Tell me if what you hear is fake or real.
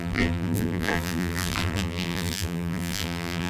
fake